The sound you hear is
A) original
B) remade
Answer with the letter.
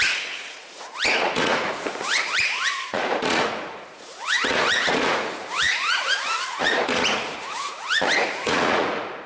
B